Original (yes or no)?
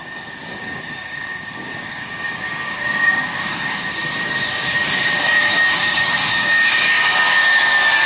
no